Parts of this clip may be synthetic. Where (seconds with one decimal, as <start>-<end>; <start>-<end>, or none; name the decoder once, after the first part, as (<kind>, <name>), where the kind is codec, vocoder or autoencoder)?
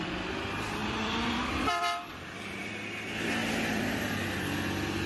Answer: 0.8-2.7 (vocoder, BigVGAN v2); 3.4-4.1